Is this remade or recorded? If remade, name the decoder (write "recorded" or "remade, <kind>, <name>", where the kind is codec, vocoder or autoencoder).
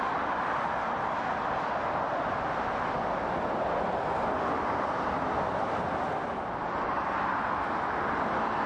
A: recorded